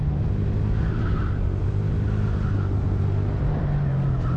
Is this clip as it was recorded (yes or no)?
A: yes